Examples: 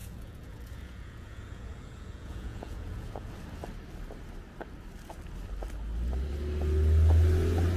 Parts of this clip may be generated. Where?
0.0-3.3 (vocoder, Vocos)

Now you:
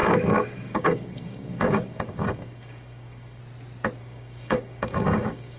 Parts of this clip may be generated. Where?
0.0-3.4 (codec, DAC); 4.0-5.6

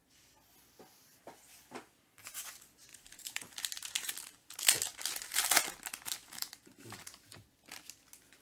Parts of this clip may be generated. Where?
2.9-3.6 (vocoder, BigVGAN v2); 6.2-7.2

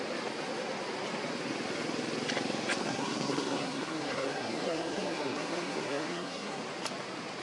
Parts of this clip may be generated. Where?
2.8-6.6 (codec, SNAC)

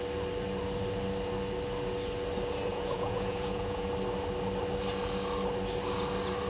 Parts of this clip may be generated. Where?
2.7-3.9 (vocoder, Vocos)